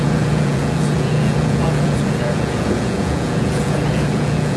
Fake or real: fake